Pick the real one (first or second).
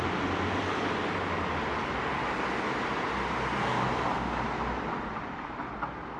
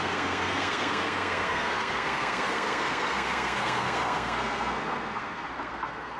first